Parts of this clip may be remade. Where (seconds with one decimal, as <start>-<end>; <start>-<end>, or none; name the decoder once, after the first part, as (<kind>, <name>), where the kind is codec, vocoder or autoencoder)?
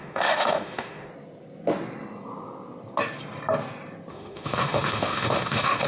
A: 0.0-1.1 (autoencoder, DAC-VAE); 4.1-5.9